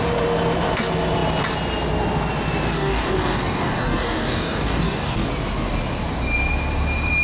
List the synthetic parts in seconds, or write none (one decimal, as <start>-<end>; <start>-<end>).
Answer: 2.7-5.3